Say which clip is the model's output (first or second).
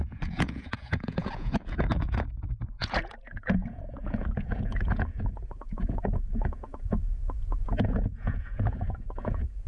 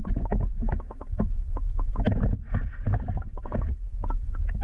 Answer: first